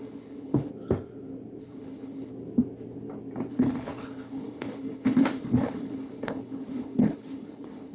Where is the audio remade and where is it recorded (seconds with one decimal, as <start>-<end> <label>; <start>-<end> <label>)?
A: 0.0-0.7 remade; 0.7-1.6 recorded; 1.6-2.3 remade; 2.3-3.5 recorded; 3.5-7.9 remade